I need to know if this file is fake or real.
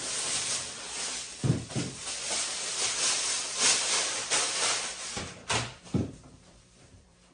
fake